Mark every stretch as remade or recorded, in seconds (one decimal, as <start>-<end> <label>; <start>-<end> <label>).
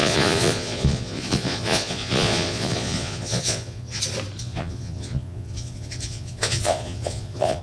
0.0-4.0 remade; 4.0-4.4 recorded; 4.4-7.6 remade